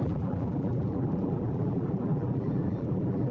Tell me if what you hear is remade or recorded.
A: remade